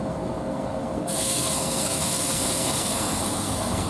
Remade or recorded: remade